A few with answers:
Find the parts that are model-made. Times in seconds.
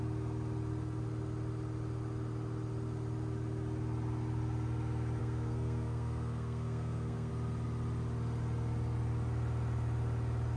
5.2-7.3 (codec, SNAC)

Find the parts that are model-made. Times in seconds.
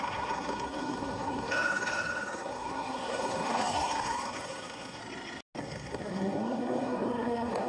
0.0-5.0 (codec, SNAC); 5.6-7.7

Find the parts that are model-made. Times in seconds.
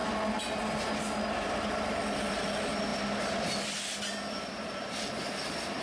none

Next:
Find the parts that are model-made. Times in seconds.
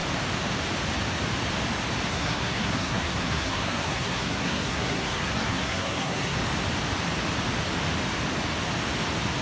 2.1-6.4 (codec, SNAC)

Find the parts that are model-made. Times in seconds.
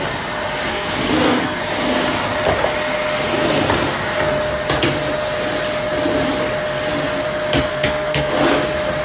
0.7-1.6 (codec, SNAC); 7.7-8.3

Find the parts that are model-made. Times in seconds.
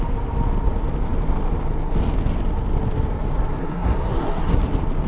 3.6-4.6 (codec, SNAC)